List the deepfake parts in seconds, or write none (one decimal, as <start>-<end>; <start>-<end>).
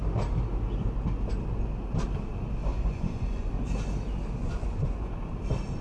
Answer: 2.7-3.5; 4.4-5.1